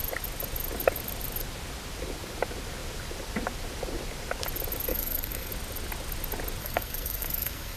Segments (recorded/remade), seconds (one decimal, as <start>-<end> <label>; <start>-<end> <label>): 0.0-4.9 recorded; 4.9-5.5 remade; 5.5-6.6 recorded; 6.6-7.8 remade